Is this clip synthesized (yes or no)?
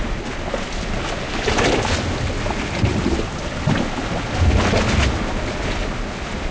no